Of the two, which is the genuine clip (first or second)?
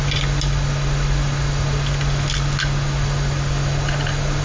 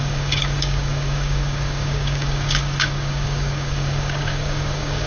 first